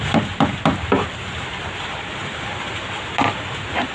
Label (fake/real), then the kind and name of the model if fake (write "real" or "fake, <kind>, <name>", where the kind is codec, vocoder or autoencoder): fake, vocoder, BigVGAN v2